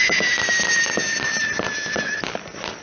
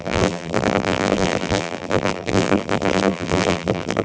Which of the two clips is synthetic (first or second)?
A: second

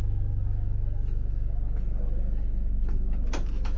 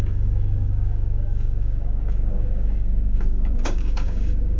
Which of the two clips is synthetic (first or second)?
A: second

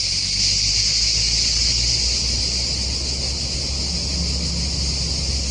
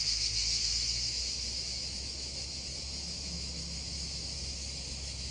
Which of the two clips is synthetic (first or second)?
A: second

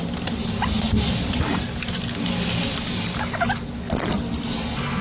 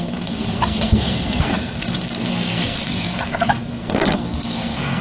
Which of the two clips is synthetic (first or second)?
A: second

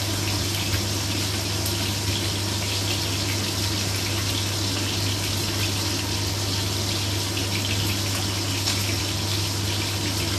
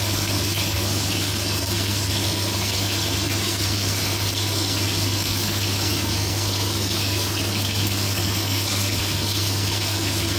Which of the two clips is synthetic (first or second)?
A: second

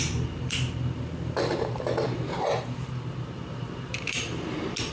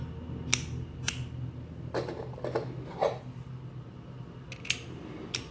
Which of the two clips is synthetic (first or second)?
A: first